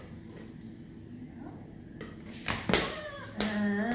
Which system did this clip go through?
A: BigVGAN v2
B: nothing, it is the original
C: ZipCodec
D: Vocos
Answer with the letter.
B